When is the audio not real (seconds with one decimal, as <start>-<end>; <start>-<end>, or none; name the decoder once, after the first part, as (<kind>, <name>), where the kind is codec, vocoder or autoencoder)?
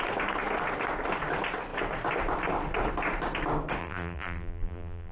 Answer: 3.8-5.1 (vocoder, BigVGAN v2)